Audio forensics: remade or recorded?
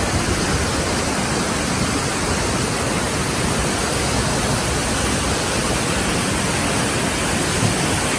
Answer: recorded